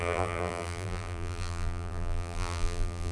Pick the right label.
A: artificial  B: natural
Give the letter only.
A